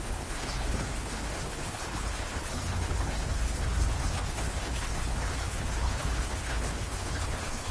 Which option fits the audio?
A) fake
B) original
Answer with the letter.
A